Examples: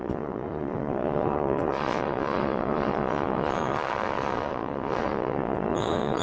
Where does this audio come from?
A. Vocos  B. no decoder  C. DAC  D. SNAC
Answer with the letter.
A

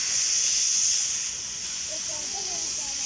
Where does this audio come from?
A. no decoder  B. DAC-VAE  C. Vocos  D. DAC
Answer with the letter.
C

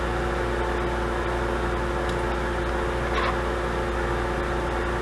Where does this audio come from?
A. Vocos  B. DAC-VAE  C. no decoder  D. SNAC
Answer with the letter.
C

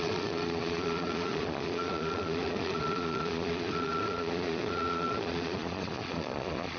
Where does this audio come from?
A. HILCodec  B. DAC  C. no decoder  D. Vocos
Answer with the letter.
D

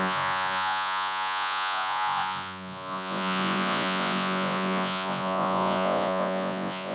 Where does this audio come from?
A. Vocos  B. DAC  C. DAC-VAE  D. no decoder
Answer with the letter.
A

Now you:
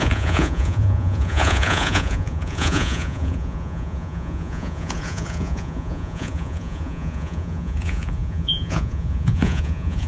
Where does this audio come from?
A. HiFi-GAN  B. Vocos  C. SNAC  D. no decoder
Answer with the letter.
B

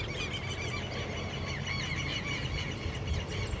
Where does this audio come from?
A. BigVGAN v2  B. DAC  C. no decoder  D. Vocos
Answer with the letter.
C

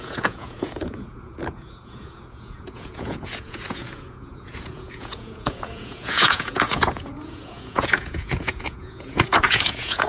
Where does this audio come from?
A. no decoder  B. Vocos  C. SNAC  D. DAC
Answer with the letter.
B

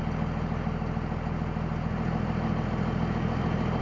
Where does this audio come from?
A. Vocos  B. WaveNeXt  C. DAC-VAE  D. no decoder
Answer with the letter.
D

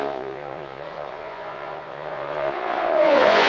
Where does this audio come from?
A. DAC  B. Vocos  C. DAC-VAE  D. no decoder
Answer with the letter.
B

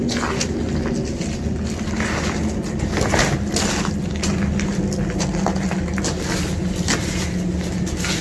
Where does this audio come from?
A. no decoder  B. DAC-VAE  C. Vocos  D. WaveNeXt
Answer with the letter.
A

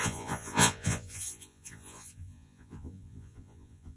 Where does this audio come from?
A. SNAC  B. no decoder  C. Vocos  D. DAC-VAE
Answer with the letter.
C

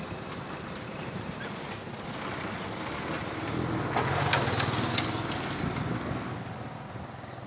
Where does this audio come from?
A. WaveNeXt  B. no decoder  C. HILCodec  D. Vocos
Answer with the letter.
B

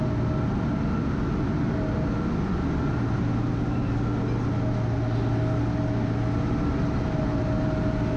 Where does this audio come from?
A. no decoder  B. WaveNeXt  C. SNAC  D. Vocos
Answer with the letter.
A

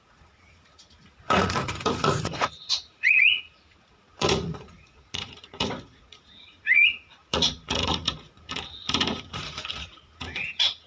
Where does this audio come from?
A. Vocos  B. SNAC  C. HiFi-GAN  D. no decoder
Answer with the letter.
A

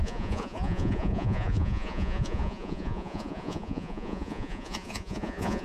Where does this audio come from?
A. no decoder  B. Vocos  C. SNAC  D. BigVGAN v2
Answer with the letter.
B